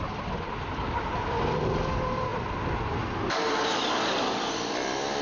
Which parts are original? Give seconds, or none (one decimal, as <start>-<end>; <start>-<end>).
0.0-5.2